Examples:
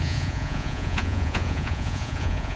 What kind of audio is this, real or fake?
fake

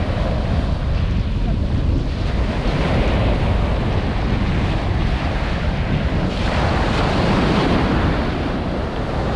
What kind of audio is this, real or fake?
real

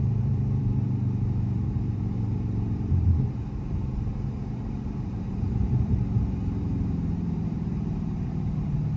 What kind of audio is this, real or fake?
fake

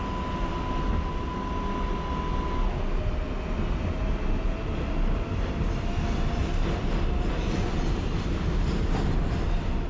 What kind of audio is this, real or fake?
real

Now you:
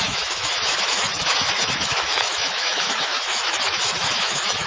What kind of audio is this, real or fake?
fake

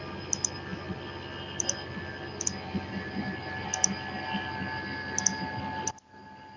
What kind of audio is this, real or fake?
fake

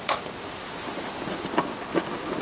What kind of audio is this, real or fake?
real